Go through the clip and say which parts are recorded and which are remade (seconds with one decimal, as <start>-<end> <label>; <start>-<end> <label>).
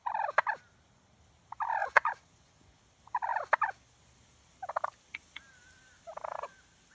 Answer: 0.0-1.8 recorded; 1.8-2.8 remade; 2.8-6.9 recorded